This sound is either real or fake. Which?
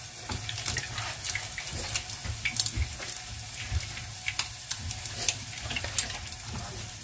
real